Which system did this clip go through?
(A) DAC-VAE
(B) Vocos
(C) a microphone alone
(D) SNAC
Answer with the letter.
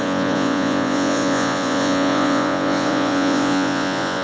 B